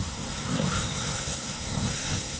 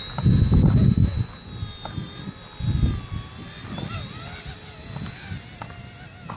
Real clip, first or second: second